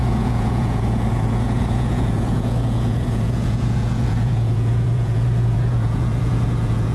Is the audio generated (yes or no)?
yes